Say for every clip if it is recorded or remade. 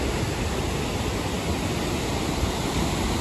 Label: recorded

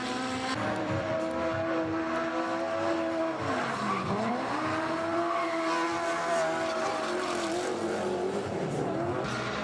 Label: remade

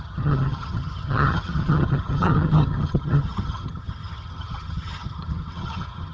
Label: remade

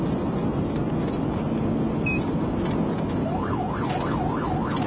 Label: recorded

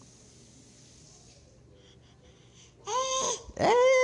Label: recorded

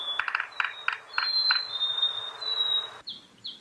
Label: recorded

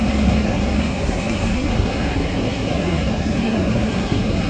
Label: remade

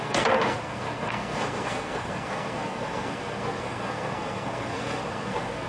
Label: remade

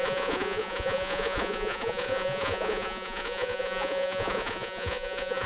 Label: remade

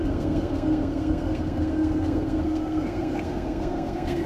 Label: remade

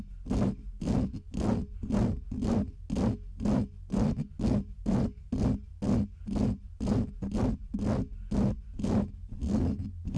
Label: recorded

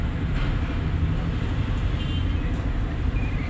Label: recorded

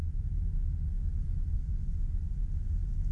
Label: recorded